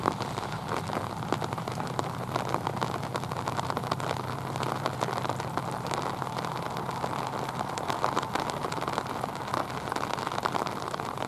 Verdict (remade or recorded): recorded